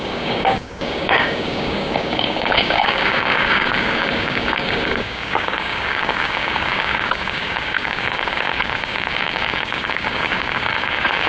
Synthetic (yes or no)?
yes